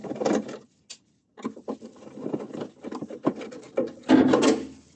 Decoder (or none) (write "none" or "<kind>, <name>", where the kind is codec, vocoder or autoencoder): none